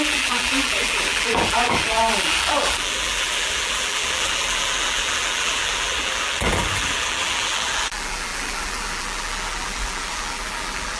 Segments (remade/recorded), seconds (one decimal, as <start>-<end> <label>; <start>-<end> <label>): 0.0-11.0 remade